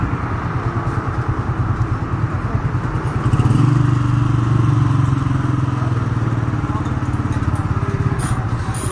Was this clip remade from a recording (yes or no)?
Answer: no